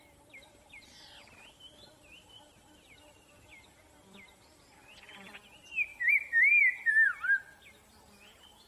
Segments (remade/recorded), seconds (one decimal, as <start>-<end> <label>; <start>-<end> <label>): 0.0-8.7 recorded